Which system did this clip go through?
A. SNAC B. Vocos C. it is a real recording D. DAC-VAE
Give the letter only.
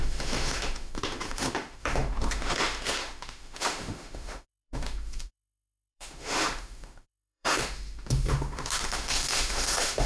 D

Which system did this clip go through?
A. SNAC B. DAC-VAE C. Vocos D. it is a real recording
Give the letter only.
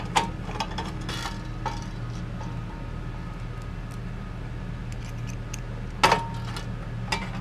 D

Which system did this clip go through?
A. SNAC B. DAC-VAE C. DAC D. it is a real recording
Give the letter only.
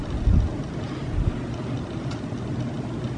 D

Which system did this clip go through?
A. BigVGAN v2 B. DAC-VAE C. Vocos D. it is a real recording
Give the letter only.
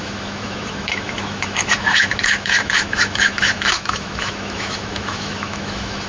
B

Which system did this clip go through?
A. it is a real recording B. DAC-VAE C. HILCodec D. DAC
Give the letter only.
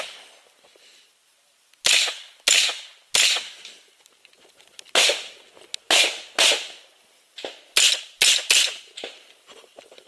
A